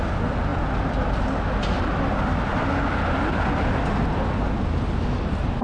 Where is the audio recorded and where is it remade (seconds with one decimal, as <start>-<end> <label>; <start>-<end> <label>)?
0.0-5.6 recorded